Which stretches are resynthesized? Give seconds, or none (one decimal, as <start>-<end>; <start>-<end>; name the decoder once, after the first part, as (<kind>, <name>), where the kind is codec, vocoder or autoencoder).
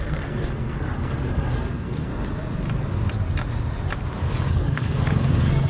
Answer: 0.0-2.1 (codec, SNAC); 4.5-5.7